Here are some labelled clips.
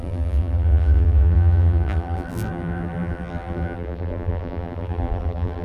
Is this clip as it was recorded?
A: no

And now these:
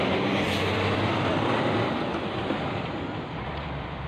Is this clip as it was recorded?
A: no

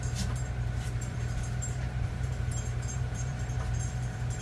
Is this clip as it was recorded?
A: no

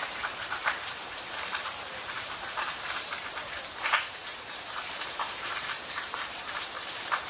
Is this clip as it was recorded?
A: no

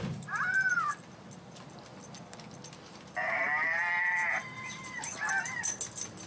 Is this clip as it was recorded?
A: no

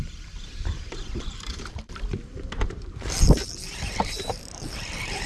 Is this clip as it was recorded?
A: no